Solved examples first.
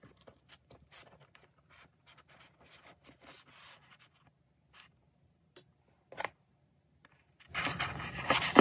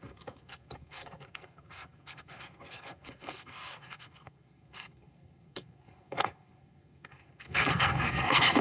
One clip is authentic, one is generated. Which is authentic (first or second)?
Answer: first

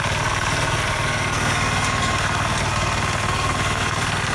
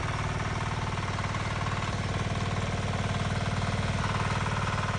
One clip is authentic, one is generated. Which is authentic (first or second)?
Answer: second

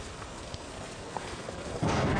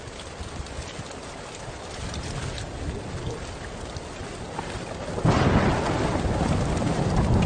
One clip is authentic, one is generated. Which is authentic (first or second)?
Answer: second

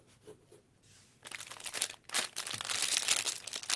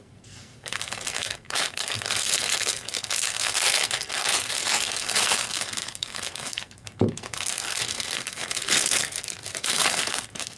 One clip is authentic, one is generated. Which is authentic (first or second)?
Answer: first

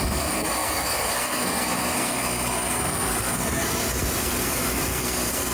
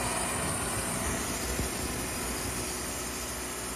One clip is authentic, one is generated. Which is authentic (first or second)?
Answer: second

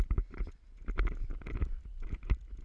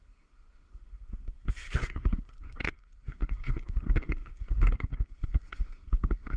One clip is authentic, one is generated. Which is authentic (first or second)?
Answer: first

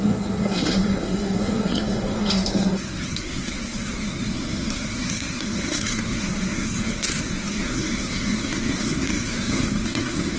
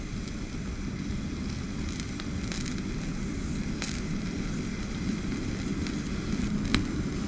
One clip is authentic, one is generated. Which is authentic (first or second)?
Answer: second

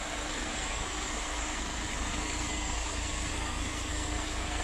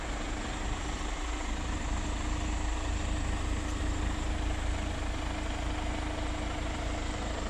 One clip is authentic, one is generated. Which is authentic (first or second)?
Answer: second